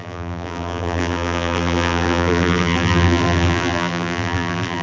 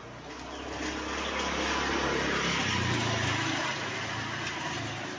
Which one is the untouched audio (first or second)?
second